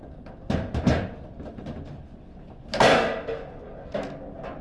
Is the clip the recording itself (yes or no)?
yes